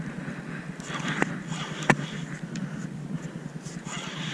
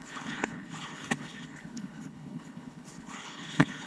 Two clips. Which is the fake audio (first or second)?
second